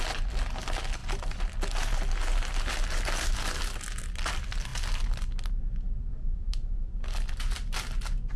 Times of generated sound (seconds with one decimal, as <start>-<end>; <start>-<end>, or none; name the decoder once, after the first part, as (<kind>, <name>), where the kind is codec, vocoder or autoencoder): 6.1-6.9 (autoencoder, DAC-VAE)